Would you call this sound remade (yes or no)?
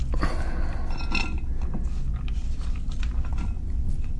no